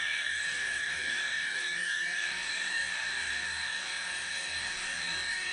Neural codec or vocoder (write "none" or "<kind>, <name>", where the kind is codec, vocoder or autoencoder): codec, DAC